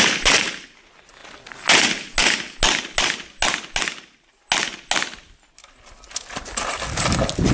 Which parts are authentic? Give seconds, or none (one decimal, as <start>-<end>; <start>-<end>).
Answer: 0.0-7.5